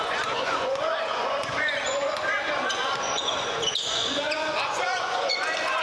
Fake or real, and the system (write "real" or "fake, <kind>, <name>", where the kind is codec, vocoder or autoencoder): fake, vocoder, Vocos